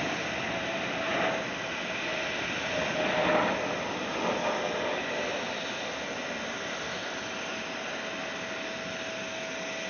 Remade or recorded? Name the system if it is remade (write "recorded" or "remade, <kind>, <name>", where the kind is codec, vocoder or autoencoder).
recorded